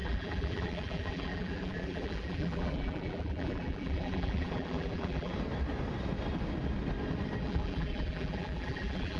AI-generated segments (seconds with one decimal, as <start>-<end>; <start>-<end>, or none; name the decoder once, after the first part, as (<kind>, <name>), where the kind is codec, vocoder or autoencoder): 0.0-5.3 (vocoder, BigVGAN v2); 7.4-9.2